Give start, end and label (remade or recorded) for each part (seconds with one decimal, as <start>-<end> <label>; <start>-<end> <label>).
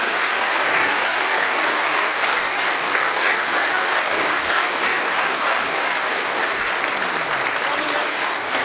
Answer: 0.0-6.7 remade; 6.7-8.0 recorded; 8.0-8.6 remade